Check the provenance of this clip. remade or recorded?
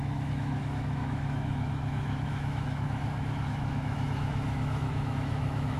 remade